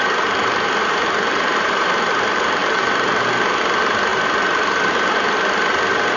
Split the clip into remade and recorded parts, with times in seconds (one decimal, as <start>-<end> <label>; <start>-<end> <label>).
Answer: 0.0-6.2 remade